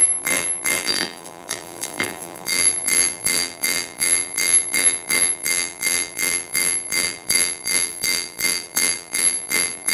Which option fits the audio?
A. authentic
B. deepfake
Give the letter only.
B